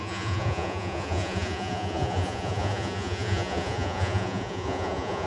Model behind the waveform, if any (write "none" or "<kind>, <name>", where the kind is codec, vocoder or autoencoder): vocoder, Vocos